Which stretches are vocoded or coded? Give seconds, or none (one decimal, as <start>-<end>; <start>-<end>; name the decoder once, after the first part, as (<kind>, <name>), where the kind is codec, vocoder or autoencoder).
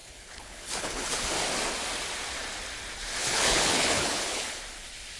0.0-1.3 (codec, HILCodec); 3.2-4.6